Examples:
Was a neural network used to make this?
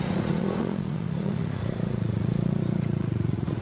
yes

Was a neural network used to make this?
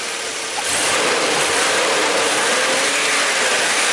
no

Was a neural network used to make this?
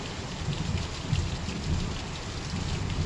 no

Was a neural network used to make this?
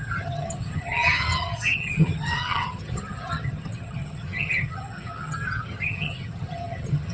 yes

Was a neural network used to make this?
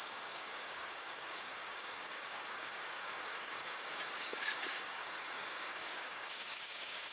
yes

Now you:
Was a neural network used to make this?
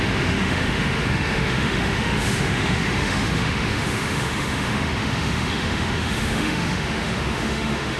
yes